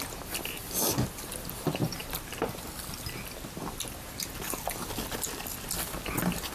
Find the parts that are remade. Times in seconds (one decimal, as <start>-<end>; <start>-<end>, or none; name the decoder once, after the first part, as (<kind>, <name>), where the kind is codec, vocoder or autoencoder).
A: none